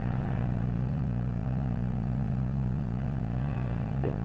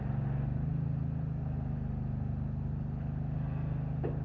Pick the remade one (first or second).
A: first